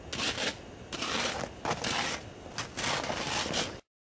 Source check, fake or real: real